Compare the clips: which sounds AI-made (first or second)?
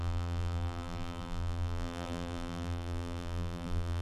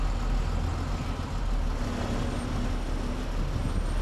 first